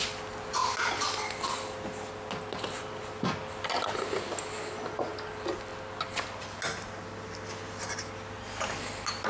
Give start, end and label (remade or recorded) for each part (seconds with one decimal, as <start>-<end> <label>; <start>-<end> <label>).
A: 0.0-9.3 recorded